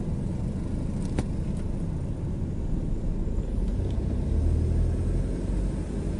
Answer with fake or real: real